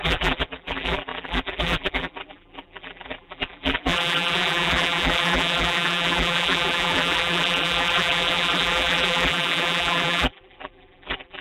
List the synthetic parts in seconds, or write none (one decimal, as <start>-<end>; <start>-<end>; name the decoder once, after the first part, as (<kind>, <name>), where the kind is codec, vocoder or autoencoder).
0.0-11.4 (vocoder, BigVGAN v2)